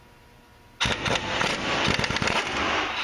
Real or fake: real